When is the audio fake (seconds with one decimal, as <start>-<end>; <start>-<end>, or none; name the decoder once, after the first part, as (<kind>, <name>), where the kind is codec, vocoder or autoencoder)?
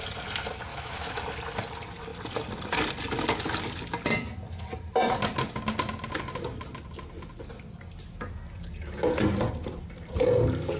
0.7-1.2 (autoencoder, DAC-VAE)